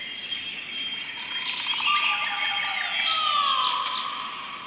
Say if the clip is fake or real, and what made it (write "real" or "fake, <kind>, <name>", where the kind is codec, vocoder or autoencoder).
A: real